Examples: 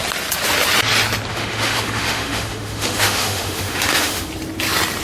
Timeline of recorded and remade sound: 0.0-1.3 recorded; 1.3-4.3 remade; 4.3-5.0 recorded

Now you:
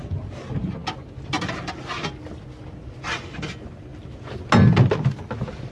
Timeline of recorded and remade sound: 0.0-5.7 recorded